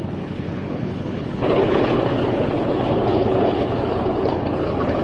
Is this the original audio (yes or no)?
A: no